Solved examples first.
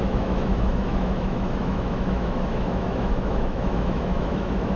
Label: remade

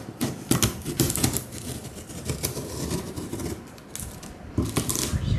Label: recorded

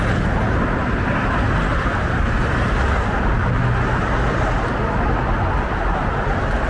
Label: recorded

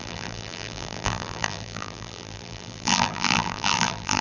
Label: remade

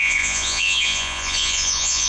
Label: remade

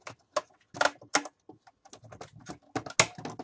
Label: recorded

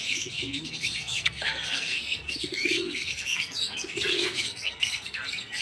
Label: remade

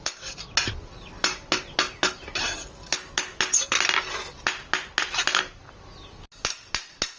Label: recorded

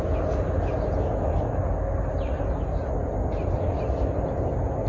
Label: recorded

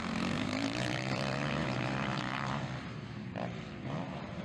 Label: remade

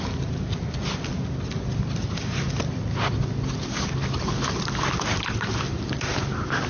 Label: recorded